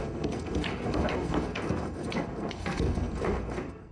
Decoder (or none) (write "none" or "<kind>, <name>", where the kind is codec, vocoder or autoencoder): codec, SNAC